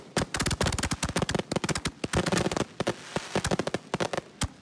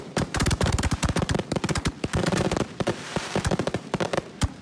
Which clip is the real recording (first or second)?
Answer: first